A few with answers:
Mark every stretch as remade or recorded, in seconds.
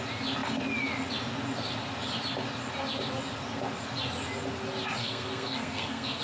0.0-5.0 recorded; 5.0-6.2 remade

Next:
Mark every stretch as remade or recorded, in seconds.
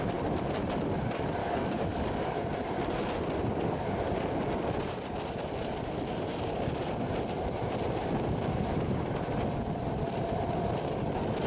0.0-1.4 recorded; 1.4-2.4 remade; 2.4-11.5 recorded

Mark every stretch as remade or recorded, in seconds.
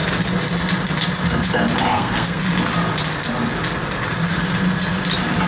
0.0-1.9 recorded; 1.9-2.4 remade; 2.4-5.5 recorded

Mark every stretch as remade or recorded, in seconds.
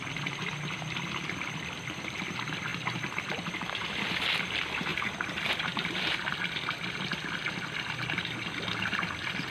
0.0-9.5 recorded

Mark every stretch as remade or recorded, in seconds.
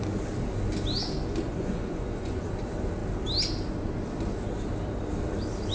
0.0-1.5 recorded; 1.5-2.4 remade; 2.4-5.7 recorded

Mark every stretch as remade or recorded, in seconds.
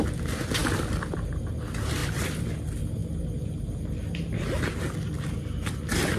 0.0-0.6 recorded; 0.6-1.5 remade; 1.5-2.0 recorded; 2.0-2.5 remade; 2.5-6.2 recorded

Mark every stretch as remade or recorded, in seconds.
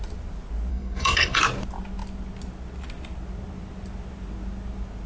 0.0-0.7 recorded; 0.7-1.4 remade; 1.4-5.1 recorded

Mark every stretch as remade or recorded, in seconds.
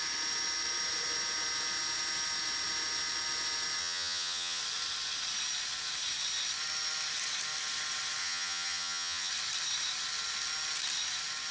0.0-3.8 recorded; 3.8-4.6 remade; 4.6-8.2 recorded; 8.2-9.3 remade; 9.3-11.5 recorded